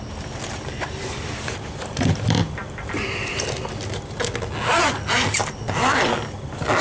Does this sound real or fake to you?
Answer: real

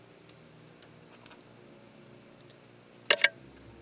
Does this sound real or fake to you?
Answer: real